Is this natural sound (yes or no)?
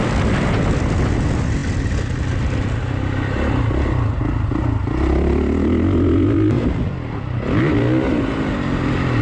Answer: yes